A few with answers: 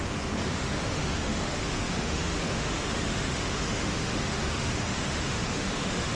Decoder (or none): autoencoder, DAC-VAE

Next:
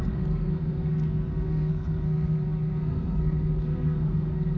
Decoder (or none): codec, SNAC